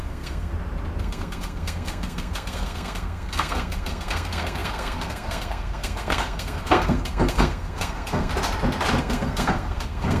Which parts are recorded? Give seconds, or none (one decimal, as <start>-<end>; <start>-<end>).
0.5-1.0; 8.3-9.0